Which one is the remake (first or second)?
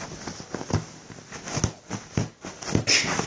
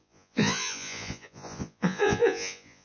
second